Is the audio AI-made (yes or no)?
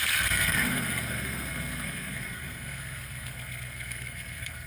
yes